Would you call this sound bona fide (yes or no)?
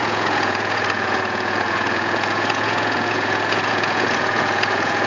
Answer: no